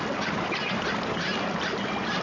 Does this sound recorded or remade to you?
recorded